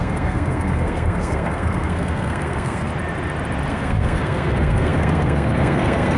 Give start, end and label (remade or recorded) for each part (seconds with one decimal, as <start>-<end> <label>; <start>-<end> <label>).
0.0-2.9 remade; 2.9-3.7 recorded; 3.7-6.2 remade